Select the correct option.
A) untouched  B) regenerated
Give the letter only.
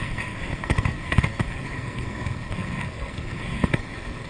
B